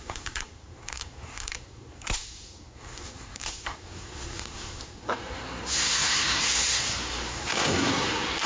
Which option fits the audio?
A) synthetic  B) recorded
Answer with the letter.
A